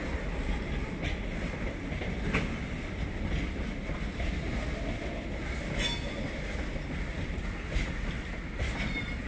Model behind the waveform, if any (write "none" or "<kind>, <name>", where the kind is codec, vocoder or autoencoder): none